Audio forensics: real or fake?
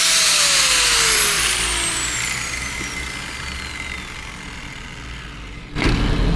real